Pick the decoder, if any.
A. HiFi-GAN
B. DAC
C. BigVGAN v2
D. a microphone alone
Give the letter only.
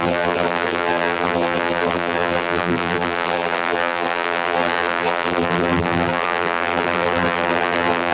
C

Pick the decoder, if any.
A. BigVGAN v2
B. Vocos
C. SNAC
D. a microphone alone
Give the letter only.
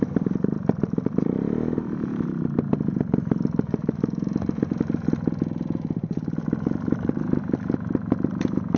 A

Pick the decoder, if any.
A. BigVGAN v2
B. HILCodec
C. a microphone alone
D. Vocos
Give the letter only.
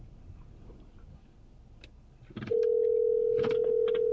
C